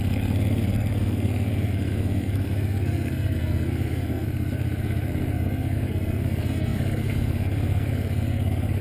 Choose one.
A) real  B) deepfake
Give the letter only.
B